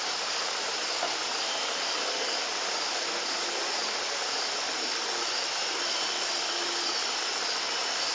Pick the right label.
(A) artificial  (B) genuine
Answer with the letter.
B